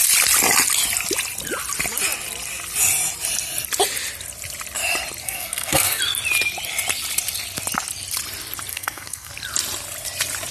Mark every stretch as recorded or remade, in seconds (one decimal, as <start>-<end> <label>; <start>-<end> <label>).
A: 0.0-5.2 recorded; 5.2-6.0 remade; 6.0-8.7 recorded; 8.7-9.3 remade; 9.3-10.5 recorded